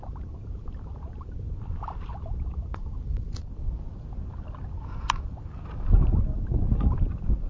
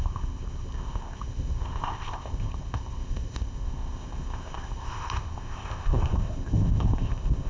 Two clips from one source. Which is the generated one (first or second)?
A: second